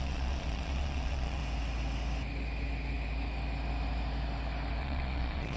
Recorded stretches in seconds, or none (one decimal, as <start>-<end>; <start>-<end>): 1.4-4.8